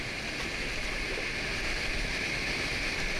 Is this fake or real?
real